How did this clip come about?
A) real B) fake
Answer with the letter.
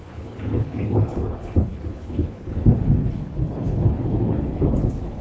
B